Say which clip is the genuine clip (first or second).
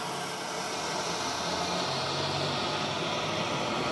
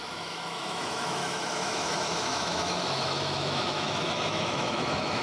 first